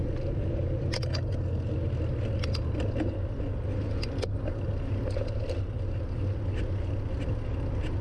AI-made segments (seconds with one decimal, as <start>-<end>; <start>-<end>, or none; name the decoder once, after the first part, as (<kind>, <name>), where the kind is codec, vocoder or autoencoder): none